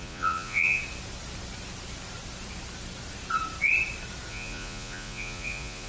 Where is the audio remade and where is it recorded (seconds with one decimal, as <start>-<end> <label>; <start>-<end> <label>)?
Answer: 0.0-0.8 remade; 0.8-4.3 recorded; 4.3-5.9 remade